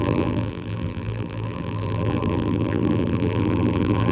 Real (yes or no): no